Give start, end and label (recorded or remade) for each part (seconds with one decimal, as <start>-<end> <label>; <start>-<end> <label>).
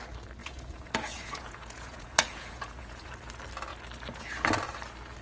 0.0-0.4 recorded; 0.4-3.1 remade; 3.1-5.2 recorded